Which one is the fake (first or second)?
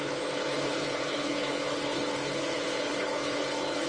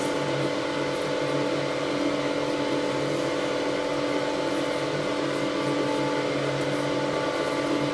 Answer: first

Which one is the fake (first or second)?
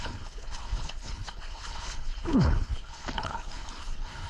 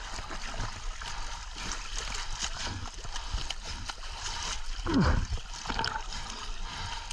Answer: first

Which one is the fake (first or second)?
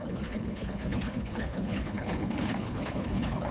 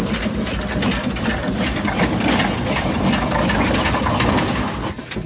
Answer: first